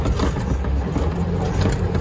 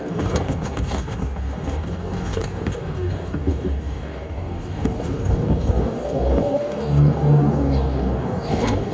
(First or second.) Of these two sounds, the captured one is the first